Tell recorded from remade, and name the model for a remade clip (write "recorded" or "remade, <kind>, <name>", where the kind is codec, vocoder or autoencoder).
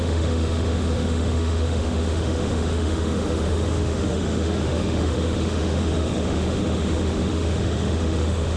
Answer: remade, autoencoder, DAC-VAE